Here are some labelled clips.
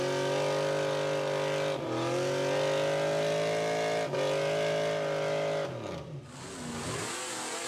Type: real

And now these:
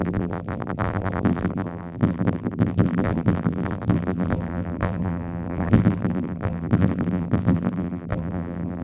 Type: fake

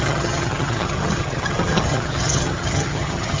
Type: fake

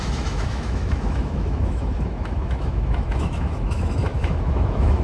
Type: fake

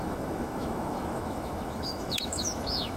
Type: fake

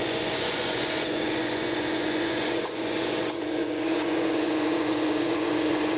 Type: fake